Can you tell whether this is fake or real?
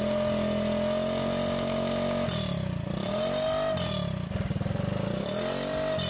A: real